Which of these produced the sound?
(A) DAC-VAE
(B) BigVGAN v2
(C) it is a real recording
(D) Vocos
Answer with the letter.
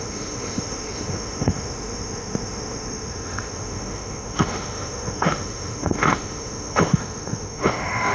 A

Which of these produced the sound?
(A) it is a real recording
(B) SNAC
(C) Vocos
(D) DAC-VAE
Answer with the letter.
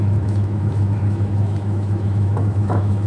D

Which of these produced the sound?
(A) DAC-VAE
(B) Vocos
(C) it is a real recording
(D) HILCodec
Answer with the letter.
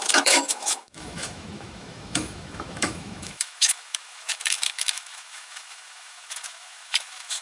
A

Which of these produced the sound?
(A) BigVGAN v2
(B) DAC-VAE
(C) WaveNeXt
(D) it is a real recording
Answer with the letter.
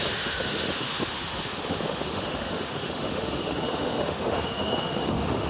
B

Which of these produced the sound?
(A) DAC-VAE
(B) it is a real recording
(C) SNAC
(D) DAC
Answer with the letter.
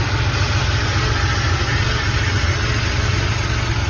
B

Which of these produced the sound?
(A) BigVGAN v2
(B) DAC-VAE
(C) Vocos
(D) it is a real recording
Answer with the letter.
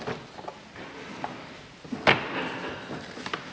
D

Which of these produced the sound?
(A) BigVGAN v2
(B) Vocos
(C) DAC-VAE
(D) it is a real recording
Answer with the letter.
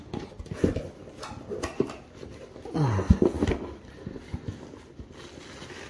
D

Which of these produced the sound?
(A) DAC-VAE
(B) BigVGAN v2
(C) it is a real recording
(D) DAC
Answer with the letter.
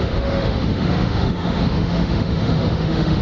A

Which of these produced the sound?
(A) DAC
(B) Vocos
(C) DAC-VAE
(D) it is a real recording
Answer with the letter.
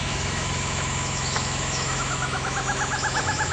C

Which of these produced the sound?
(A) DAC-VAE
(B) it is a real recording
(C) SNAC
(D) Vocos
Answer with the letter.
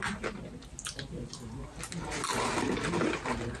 B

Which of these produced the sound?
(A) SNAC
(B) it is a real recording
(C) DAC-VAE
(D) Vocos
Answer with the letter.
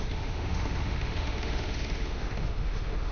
C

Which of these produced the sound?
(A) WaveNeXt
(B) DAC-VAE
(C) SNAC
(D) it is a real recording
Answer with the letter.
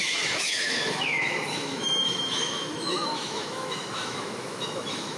B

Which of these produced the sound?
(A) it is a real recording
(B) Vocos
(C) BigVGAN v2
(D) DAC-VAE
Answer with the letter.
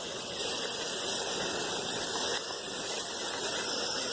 A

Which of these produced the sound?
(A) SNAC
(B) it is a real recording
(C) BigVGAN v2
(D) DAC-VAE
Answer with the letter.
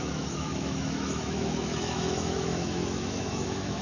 D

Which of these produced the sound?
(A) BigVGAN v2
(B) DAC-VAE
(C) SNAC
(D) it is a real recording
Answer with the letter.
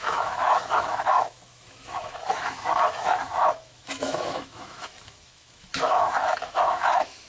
B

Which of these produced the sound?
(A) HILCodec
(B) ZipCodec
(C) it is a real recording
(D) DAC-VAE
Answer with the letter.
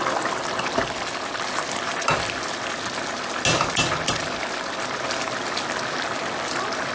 C